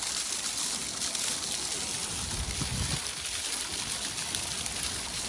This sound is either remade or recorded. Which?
recorded